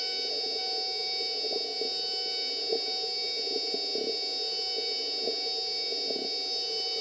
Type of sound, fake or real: real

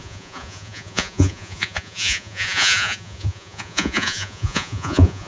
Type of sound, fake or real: fake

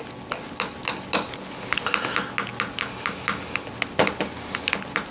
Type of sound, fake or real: real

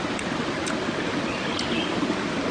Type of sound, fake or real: real